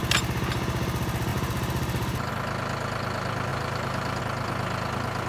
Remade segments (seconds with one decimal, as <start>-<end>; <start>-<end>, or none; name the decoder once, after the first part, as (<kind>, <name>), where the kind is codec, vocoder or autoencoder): 1.3-2.3 (vocoder, BigVGAN v2); 3.5-4.2